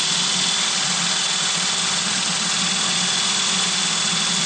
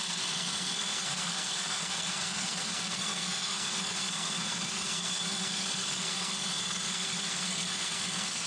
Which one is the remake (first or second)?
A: second